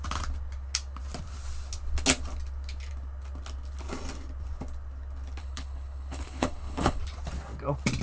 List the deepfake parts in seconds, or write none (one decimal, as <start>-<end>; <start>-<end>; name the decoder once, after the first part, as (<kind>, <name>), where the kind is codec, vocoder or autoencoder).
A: 5.4-7.0 (codec, HILCodec)